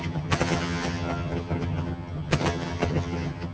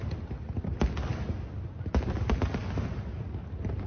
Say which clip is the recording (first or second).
second